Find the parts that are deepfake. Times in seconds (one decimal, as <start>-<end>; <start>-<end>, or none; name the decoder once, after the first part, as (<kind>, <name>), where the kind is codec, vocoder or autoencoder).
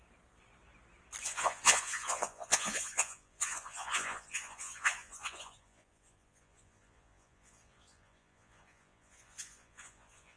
1.2-10.4 (vocoder, Vocos)